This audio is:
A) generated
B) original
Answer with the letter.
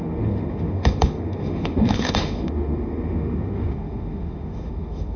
A